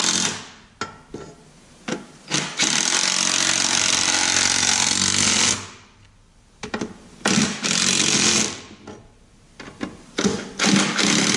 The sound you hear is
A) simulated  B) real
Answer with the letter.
B